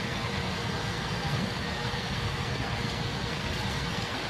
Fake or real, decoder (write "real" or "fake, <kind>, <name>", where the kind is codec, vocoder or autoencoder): fake, codec, SNAC